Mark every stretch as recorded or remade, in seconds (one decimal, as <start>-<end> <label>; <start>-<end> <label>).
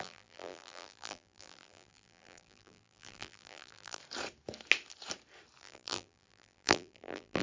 0.0-4.0 remade; 4.0-5.6 recorded; 5.6-7.4 remade